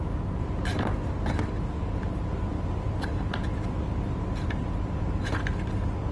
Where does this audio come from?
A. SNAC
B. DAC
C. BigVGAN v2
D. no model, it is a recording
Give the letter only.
D